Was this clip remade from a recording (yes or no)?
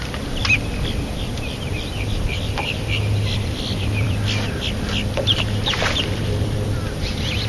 yes